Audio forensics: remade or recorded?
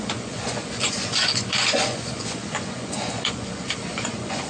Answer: remade